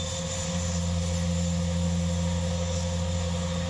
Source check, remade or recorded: recorded